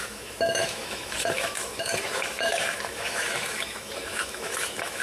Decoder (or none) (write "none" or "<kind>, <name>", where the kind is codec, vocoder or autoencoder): autoencoder, DAC-VAE